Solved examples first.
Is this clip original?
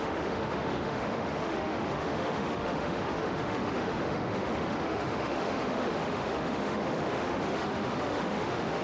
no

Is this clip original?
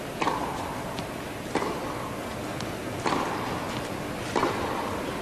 yes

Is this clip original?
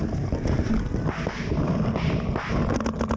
yes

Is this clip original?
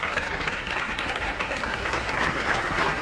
no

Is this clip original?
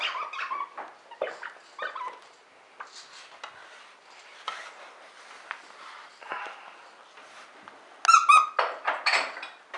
yes